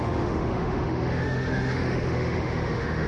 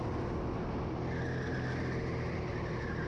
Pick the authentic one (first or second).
second